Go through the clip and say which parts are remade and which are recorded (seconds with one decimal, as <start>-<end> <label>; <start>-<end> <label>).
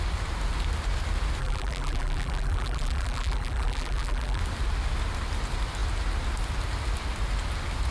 0.0-1.4 recorded; 1.4-4.4 remade; 4.4-7.9 recorded